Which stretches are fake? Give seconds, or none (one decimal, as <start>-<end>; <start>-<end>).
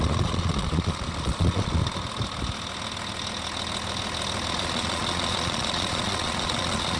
0.0-1.8; 4.5-7.0